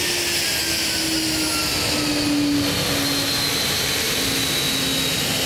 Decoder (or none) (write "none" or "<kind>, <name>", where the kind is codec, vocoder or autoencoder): none